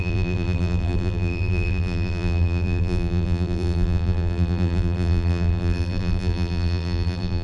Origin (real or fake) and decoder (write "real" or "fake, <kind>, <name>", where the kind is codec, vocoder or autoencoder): fake, vocoder, BigVGAN v2